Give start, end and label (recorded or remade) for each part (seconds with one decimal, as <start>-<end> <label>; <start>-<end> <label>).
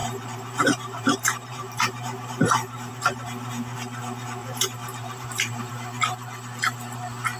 0.0-2.9 remade; 2.9-4.4 recorded; 4.4-5.7 remade; 5.7-7.4 recorded